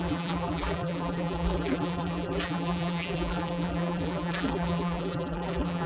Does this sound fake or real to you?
fake